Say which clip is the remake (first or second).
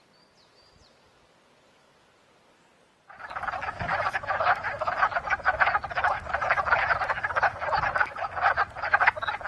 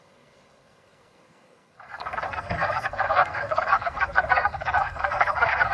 second